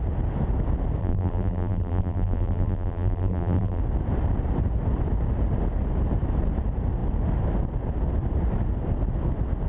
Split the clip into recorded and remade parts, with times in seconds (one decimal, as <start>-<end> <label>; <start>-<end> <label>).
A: 0.0-1.0 recorded; 1.0-3.8 remade; 3.8-9.7 recorded